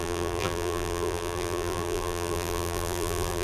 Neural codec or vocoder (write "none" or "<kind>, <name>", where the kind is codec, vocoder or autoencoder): vocoder, BigVGAN v2